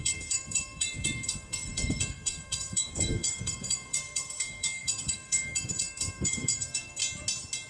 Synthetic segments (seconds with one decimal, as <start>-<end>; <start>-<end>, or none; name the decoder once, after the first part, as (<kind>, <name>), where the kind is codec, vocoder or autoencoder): 0.0-7.0 (codec, SNAC)

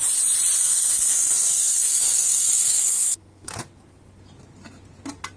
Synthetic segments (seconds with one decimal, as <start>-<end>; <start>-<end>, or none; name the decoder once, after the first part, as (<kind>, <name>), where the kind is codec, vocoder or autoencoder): 0.6-3.5 (codec, SNAC)

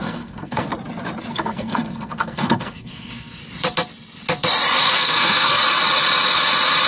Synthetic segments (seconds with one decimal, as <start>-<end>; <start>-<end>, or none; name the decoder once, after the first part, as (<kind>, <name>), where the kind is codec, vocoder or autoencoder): 0.0-0.7 (codec, SNAC); 1.3-3.4; 4.8-5.6

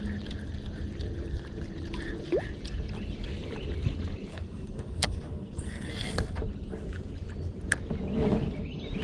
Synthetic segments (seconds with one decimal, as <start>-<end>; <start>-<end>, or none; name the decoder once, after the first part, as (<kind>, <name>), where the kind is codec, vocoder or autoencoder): 4.3-5.9 (codec, SNAC)

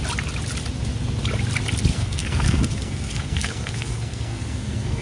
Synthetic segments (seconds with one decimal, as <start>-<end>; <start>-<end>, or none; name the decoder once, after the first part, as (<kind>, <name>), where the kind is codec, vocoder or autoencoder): 1.9-5.0 (codec, SNAC)

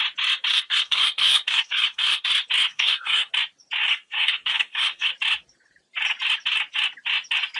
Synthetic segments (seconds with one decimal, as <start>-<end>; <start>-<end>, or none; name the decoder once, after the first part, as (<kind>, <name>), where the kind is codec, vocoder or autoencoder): 0.5-2.3 (codec, SNAC); 2.7-3.3; 3.9-5.1